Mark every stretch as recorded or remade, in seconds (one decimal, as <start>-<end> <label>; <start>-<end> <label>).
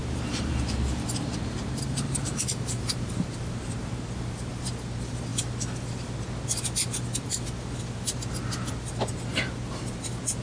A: 0.0-4.7 remade; 4.7-9.3 recorded; 9.3-9.8 remade; 9.8-10.4 recorded